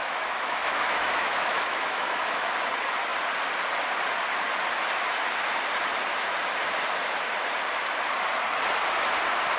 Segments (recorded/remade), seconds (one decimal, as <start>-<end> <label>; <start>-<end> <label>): 0.0-2.5 remade; 2.5-9.6 recorded